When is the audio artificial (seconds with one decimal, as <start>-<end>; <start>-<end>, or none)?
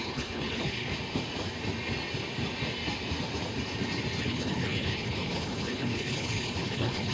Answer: 0.0-0.9; 4.2-7.1